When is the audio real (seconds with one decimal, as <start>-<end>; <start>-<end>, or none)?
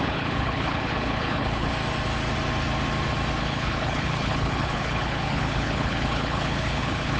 1.7-3.4